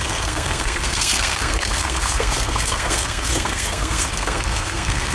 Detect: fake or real fake